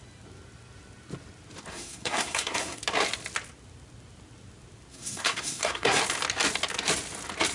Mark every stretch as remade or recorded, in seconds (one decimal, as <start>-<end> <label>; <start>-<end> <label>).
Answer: 0.0-1.7 recorded; 1.7-2.8 remade; 2.8-4.9 recorded; 4.9-6.0 remade; 6.0-7.5 recorded